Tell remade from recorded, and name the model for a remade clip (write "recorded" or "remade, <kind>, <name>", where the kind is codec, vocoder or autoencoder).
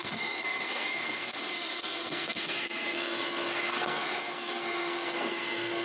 remade, codec, SNAC